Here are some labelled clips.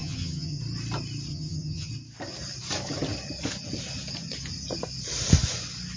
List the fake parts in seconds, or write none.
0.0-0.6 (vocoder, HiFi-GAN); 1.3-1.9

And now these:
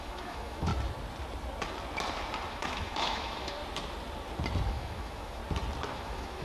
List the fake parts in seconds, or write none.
0.0-0.7 (autoencoder, DAC-VAE); 2.5-3.6; 4.7-5.4; 5.9-6.4

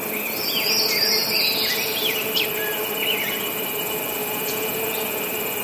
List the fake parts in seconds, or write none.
4.2-4.8 (vocoder, Vocos)

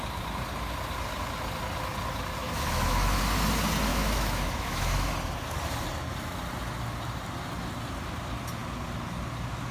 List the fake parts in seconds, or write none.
2.4-3.2 (autoencoder, DAC-VAE); 3.9-5.1